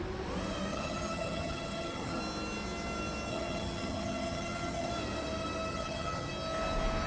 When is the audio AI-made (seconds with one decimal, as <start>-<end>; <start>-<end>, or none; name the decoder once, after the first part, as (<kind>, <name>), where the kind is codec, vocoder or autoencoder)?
0.7-2.2 (vocoder, HiFi-GAN); 3.3-4.9; 5.7-6.3